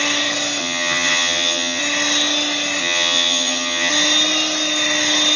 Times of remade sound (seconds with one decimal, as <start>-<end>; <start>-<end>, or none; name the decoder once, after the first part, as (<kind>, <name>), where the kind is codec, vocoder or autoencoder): 0.6-1.8 (vocoder, HiFi-GAN); 2.8-3.9